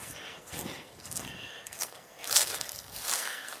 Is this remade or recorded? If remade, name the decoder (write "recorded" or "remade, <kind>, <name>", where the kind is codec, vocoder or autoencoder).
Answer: remade, codec, SNAC